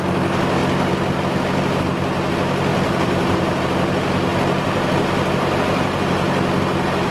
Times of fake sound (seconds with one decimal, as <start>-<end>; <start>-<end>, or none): 2.7-3.7